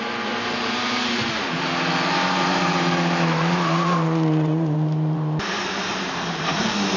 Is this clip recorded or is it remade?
remade